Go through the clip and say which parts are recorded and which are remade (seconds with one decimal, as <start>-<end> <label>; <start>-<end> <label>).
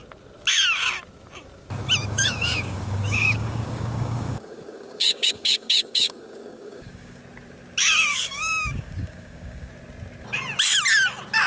0.0-2.0 recorded; 2.0-7.2 remade; 7.2-8.1 recorded; 8.1-9.7 remade; 9.7-11.5 recorded